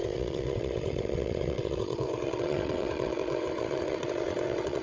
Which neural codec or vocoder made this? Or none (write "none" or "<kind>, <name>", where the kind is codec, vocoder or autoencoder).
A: vocoder, WaveNeXt